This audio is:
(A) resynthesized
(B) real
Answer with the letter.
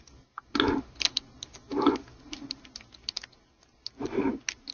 B